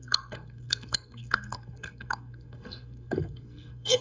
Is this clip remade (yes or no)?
yes